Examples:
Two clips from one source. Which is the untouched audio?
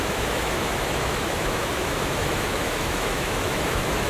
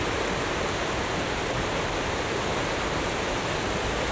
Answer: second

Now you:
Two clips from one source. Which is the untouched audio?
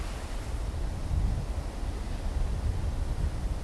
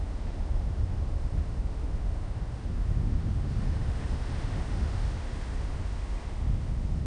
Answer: first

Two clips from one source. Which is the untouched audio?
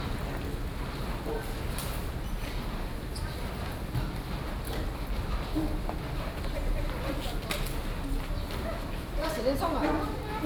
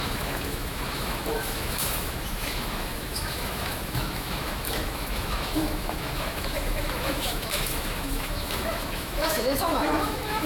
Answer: first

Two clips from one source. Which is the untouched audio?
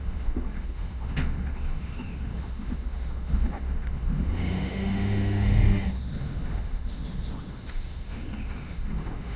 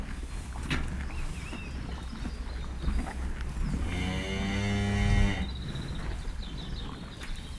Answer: second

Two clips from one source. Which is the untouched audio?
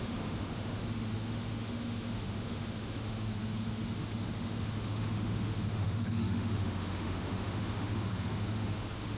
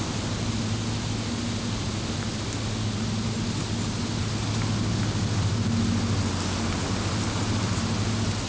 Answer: second